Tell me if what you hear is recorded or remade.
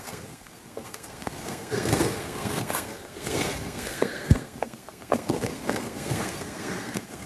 remade